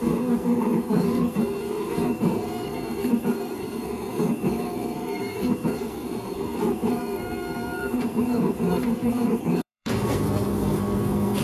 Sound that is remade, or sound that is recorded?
remade